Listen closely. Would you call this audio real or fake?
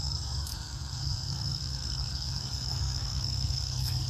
fake